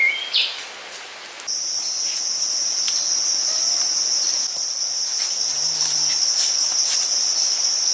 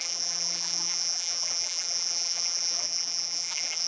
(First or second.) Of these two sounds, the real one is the first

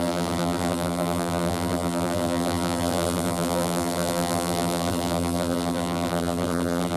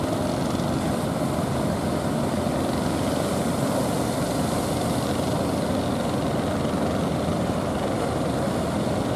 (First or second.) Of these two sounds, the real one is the second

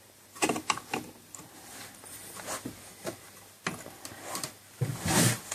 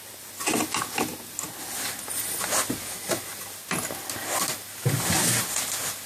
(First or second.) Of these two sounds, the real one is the second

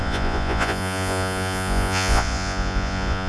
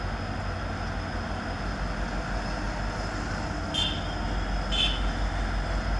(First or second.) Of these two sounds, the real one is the second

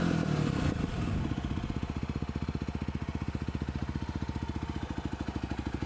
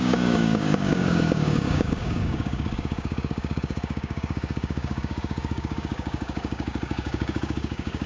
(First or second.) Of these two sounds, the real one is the first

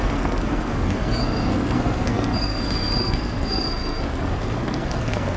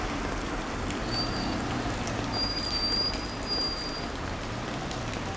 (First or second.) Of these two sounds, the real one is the second